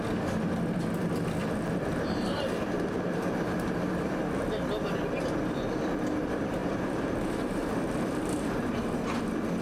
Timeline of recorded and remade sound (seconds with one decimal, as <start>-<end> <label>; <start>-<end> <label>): 0.0-1.4 recorded; 1.4-4.5 remade; 4.5-6.6 recorded; 6.6-9.2 remade; 9.2-9.6 recorded